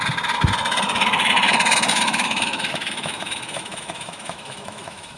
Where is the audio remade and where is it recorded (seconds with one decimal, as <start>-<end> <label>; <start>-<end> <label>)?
0.0-1.9 recorded; 1.9-5.2 remade